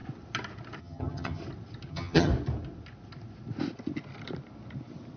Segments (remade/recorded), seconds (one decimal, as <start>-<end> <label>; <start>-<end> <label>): 0.0-0.8 recorded; 0.8-1.4 remade; 1.4-1.9 recorded; 1.9-2.3 remade; 2.3-5.2 recorded